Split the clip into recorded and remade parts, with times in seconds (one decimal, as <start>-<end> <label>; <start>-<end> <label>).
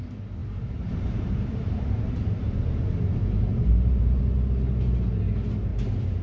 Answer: 0.0-0.4 recorded; 0.4-2.1 remade; 2.1-3.5 recorded; 3.5-4.2 remade; 4.2-6.2 recorded